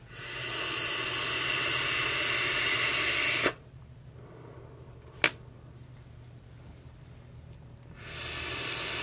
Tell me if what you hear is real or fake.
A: real